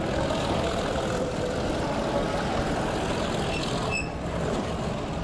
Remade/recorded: recorded